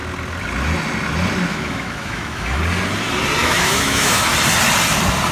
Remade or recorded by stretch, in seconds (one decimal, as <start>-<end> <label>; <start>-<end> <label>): 0.0-1.5 recorded; 1.5-2.6 remade; 2.6-3.4 recorded; 3.4-4.3 remade; 4.3-5.3 recorded